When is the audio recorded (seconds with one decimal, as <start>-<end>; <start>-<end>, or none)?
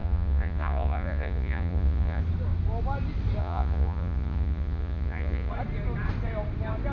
2.2-3.4; 5.5-6.9